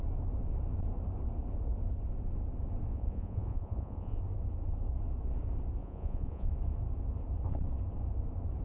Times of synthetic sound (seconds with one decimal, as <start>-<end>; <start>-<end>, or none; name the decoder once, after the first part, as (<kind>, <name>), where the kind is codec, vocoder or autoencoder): 2.9-4.2 (vocoder, Vocos); 5.8-6.5

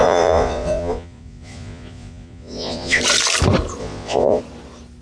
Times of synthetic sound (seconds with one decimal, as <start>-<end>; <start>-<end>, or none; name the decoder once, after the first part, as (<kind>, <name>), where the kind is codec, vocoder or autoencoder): 0.0-3.0 (vocoder, Vocos); 3.8-4.4

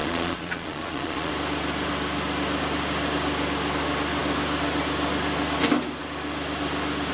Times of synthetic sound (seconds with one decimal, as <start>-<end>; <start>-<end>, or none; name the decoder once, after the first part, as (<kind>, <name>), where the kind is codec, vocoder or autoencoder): 0.0-1.3 (vocoder, Vocos)

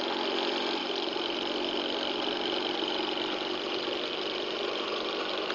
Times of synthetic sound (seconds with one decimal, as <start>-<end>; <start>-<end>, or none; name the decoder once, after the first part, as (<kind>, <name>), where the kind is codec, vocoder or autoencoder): none